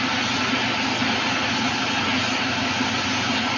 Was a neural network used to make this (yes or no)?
no